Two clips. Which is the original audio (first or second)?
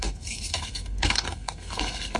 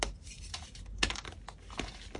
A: second